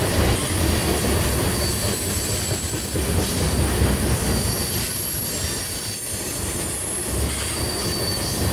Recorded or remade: recorded